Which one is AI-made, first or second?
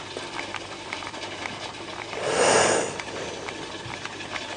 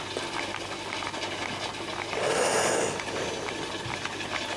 first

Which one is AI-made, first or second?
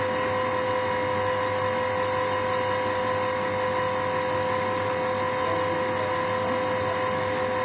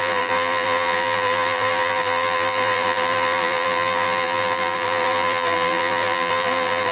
second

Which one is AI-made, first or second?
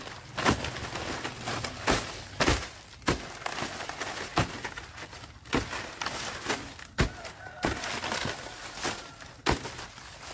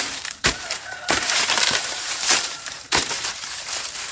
second